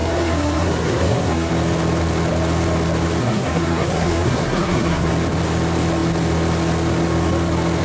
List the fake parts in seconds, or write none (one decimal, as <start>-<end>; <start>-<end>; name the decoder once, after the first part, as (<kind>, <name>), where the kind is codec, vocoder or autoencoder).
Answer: 0.0-1.5 (codec, SNAC); 3.2-5.1